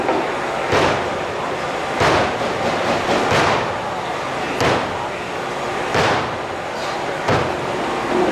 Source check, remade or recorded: recorded